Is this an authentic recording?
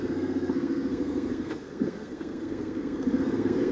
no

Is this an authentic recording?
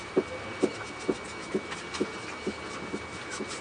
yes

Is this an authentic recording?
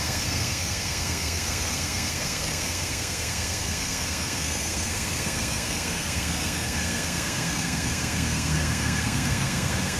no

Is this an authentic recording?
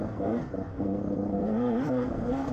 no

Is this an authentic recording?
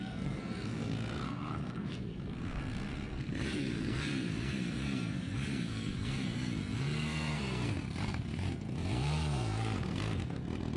no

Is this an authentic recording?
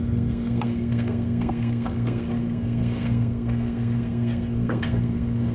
no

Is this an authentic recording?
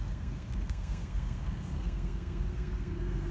no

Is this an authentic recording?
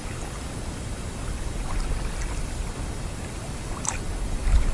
yes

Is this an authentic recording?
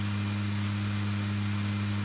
yes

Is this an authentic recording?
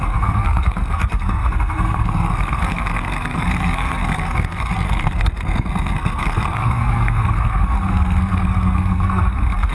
no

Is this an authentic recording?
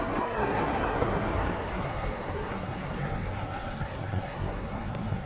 no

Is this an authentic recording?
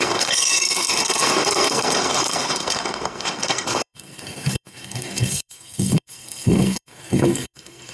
no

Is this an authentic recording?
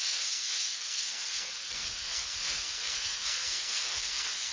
no